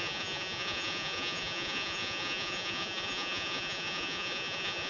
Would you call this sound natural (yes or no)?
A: no